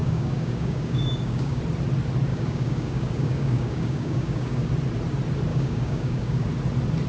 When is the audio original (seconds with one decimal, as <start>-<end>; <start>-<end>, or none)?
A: 1.6-2.3; 4.7-5.5; 6.5-7.1

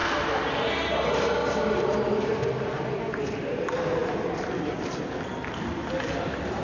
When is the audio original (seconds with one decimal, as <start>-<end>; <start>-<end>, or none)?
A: 0.0-6.6

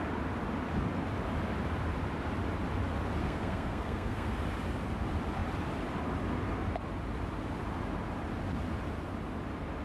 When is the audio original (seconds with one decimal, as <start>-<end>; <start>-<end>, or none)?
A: 0.0-3.2; 4.3-9.8

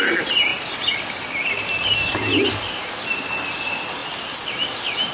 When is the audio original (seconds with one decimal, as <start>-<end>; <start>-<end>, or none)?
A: 0.0-5.1

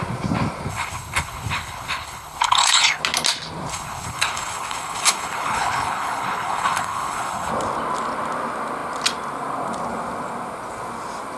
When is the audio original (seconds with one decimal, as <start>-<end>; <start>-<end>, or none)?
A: 0.0-0.7; 3.0-3.7; 7.5-11.4

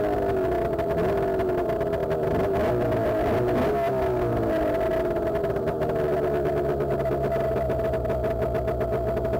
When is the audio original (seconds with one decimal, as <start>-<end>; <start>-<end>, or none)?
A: 0.0-9.4

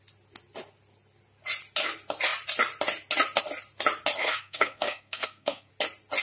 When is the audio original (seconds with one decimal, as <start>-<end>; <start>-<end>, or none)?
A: 0.0-4.2; 5.7-6.2

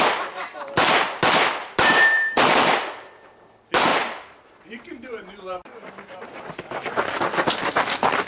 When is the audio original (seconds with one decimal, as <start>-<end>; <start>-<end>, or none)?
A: 0.0-1.6; 2.7-3.9; 6.8-8.3